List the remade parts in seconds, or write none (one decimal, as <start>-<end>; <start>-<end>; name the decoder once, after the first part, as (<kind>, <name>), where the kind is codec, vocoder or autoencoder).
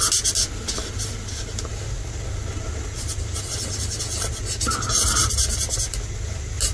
none